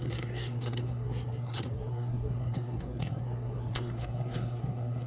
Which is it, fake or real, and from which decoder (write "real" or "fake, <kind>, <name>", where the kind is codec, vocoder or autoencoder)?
fake, codec, SNAC